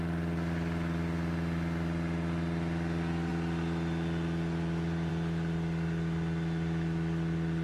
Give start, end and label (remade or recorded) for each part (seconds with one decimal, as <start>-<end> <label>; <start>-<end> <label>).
0.0-7.6 recorded